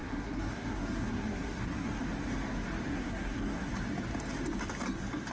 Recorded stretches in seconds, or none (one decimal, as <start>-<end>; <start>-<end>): 2.0-2.9; 3.7-5.3